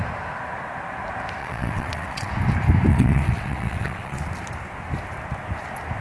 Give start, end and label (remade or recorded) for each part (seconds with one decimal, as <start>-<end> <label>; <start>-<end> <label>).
0.0-1.4 recorded; 1.4-2.3 remade; 2.3-2.9 recorded; 2.9-4.3 remade; 4.3-6.0 recorded